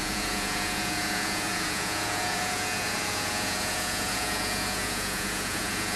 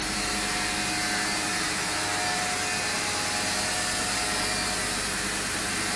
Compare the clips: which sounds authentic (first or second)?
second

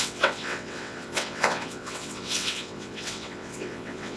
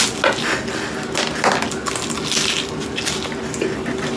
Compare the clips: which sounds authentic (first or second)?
second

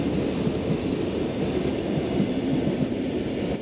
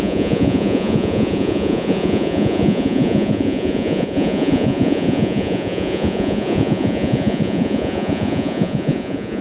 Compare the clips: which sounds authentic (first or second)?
first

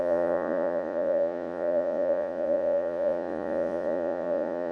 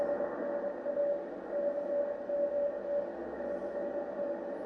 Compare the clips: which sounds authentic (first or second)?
second